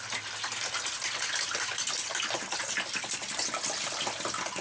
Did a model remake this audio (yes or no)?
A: no